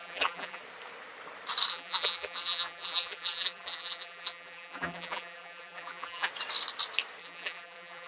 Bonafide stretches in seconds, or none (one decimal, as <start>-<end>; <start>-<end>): 0.6-1.7; 6.3-7.2